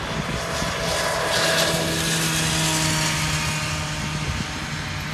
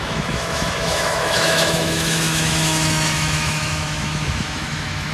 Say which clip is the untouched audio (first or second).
first